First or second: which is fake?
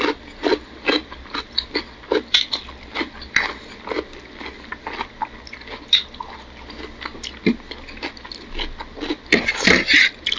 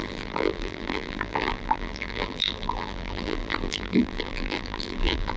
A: second